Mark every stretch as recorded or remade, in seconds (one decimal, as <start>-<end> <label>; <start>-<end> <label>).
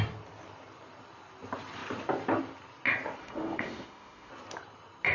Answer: 0.0-3.2 recorded; 3.2-4.3 remade; 4.3-5.1 recorded